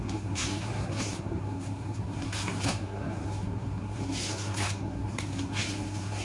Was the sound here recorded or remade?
remade